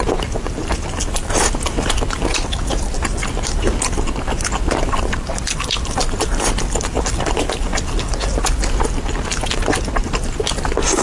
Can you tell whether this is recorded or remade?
recorded